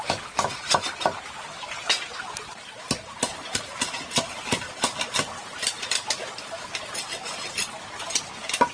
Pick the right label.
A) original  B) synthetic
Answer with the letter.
A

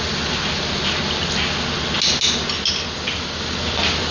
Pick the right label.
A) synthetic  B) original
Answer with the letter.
B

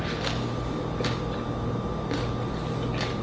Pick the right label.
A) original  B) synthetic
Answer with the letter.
A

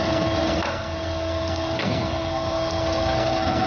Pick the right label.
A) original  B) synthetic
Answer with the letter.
B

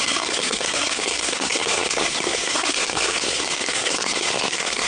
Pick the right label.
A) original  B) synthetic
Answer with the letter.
B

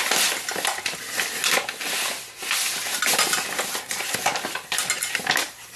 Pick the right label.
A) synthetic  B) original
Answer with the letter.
B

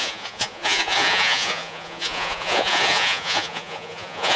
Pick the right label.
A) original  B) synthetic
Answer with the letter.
B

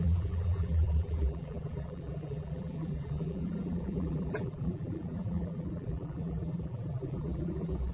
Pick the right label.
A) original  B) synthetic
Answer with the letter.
B